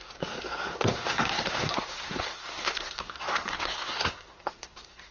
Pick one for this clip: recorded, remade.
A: remade